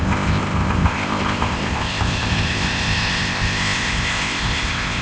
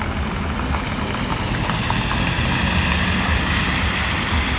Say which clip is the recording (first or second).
second